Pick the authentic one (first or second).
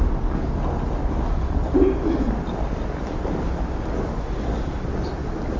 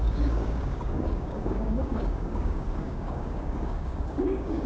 first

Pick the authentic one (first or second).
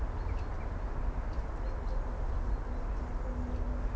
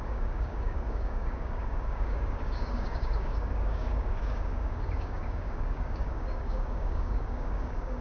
first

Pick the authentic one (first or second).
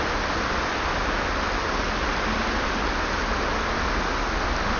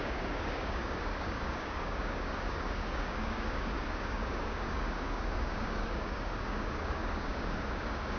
first